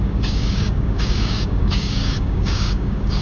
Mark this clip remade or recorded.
remade